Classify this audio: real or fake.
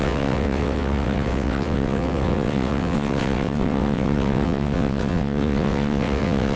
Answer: fake